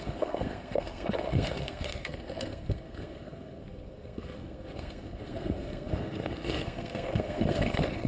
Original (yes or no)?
no